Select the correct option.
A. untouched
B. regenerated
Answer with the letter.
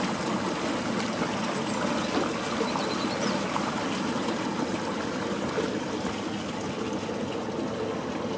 A